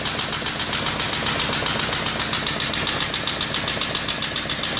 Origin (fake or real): real